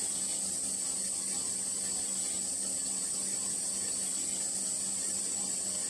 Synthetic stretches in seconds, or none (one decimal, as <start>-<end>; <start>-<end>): none